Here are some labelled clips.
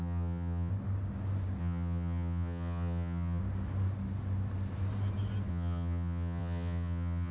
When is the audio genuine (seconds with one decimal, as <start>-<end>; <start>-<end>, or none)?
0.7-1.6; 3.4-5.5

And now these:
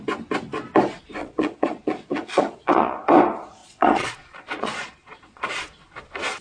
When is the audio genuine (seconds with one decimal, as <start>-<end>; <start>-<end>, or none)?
0.0-1.2; 3.2-3.6; 5.5-6.4

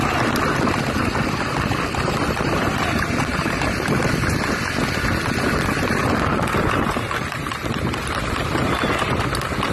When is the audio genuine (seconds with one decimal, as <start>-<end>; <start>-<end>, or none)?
0.0-3.3; 4.0-9.7